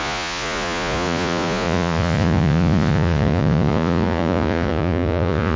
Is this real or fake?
fake